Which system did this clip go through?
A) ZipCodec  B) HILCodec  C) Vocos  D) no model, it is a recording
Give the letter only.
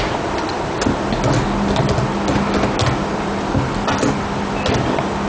D